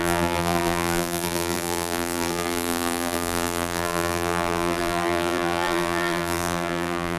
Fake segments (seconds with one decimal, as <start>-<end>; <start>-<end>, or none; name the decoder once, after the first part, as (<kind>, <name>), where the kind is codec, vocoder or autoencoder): 0.0-7.2 (vocoder, BigVGAN v2)